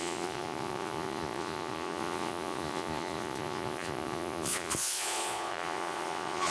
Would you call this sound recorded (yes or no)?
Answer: no